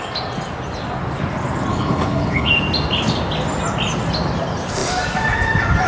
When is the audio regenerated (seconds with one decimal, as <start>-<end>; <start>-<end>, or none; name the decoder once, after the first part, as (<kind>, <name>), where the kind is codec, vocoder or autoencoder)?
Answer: 1.7-2.5 (codec, HILCodec)